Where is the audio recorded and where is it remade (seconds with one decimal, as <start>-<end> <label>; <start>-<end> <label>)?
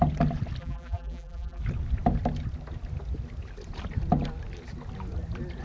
0.0-0.6 recorded; 0.6-1.6 remade; 1.6-5.6 recorded